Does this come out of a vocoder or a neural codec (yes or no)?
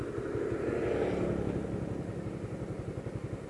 no